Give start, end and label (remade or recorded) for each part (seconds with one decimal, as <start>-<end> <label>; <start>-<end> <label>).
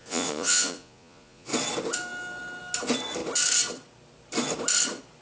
0.0-1.5 remade; 1.5-5.2 recorded